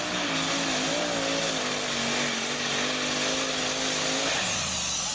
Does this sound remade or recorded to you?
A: recorded